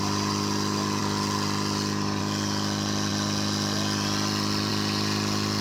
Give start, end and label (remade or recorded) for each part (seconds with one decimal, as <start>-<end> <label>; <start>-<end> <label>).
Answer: 0.0-5.6 recorded